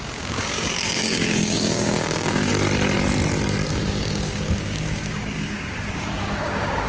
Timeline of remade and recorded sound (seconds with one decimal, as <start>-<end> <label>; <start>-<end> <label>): 0.0-2.5 remade; 2.5-3.7 recorded; 3.7-6.9 remade